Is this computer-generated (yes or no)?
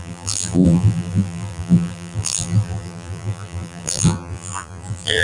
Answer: yes